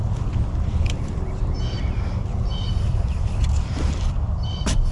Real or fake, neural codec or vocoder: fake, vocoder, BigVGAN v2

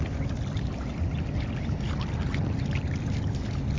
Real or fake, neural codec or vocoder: real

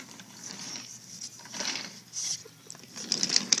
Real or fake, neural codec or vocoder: fake, vocoder, BigVGAN v2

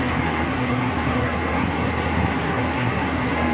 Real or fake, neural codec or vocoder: fake, codec, SNAC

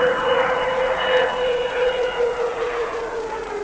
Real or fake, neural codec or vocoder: fake, vocoder, Vocos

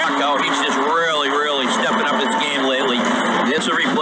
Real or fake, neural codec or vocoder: real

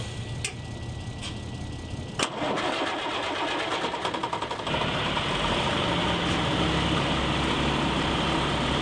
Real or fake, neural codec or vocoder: real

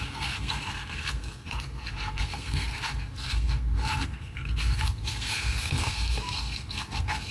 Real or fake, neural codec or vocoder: fake, codec, SNAC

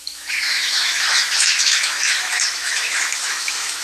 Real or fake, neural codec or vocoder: fake, autoencoder, DAC-VAE